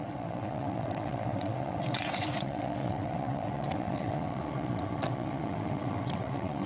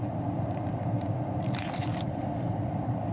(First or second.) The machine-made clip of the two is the first